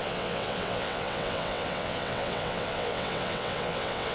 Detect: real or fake fake